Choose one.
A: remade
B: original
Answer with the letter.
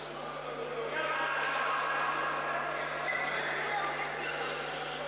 B